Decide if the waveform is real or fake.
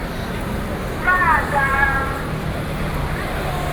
real